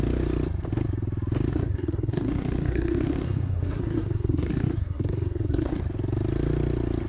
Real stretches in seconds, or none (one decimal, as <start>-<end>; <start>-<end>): 0.0-1.5; 5.8-7.1